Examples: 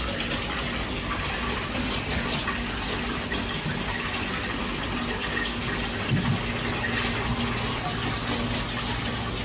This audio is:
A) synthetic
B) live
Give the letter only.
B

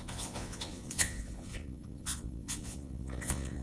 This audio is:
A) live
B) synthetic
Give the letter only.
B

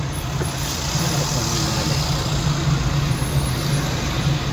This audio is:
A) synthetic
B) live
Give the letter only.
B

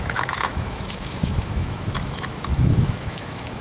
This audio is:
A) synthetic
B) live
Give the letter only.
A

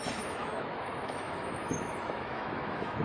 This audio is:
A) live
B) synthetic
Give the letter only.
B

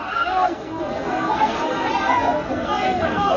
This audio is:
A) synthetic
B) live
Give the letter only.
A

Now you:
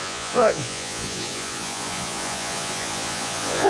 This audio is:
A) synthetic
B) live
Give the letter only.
A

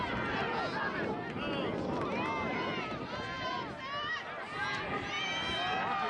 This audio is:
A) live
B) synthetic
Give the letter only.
A